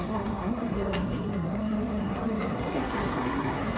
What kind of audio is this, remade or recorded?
remade